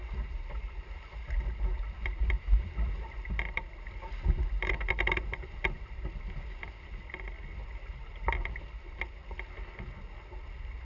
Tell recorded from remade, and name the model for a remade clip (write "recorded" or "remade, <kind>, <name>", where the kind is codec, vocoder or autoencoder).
recorded